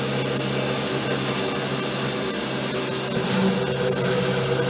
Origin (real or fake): real